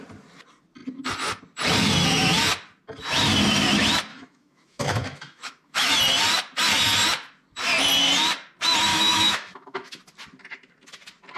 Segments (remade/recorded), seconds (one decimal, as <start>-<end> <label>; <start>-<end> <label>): 0.0-4.1 recorded; 4.1-5.9 remade; 5.9-8.9 recorded; 8.9-10.0 remade; 10.0-11.4 recorded